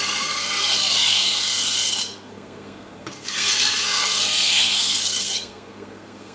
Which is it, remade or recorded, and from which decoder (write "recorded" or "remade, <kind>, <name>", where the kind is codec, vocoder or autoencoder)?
remade, codec, SNAC